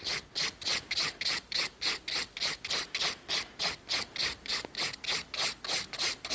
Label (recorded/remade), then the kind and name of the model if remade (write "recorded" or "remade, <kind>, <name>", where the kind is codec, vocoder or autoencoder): recorded